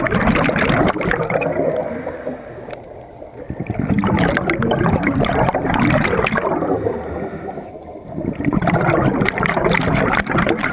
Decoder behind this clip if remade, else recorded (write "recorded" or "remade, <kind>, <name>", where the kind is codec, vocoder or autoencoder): recorded